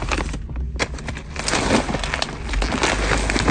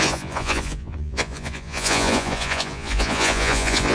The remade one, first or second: second